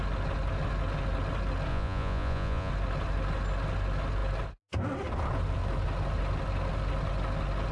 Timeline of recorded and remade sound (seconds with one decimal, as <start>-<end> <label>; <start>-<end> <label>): 0.0-1.7 recorded; 1.7-2.7 remade; 2.7-7.7 recorded